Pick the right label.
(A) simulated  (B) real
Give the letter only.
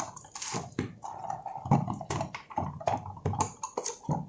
B